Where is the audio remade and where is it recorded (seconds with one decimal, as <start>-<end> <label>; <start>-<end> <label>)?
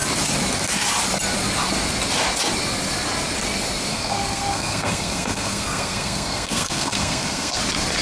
0.0-3.9 recorded; 3.9-7.6 remade; 7.6-8.0 recorded